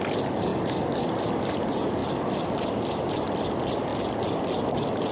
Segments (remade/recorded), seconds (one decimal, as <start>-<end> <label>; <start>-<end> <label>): 0.0-2.0 recorded; 2.0-3.1 remade; 3.1-5.1 recorded